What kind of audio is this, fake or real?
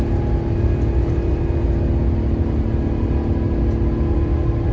real